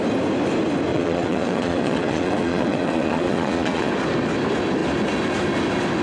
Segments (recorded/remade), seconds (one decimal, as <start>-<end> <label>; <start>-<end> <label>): 0.0-0.9 recorded; 0.9-3.9 remade; 3.9-6.0 recorded